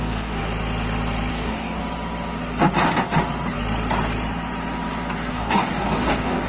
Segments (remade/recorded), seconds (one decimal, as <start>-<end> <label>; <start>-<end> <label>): 0.0-0.4 remade; 0.4-1.3 recorded; 1.3-1.8 remade; 1.8-5.3 recorded; 5.3-6.5 remade